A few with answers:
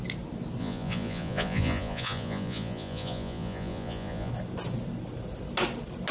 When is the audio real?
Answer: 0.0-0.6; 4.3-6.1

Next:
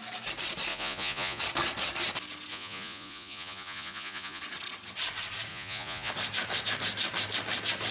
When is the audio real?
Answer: 0.0-0.7; 1.4-2.5; 4.4-5.5; 6.1-7.9

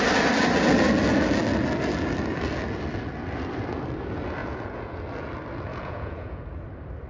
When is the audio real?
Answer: 0.0-4.4; 5.0-5.7; 6.4-7.1